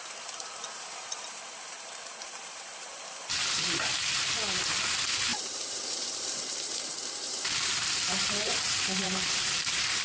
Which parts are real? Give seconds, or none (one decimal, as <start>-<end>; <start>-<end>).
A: none

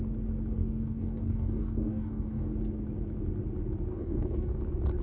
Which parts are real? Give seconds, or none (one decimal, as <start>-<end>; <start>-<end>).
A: 0.0-0.6; 2.5-3.9; 4.6-5.0

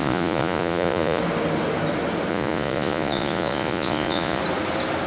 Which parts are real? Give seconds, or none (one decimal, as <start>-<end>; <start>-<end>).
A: 1.2-2.3; 4.4-5.1